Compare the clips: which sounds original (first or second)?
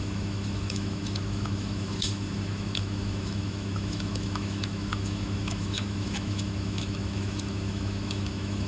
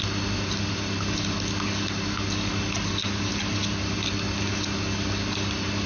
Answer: second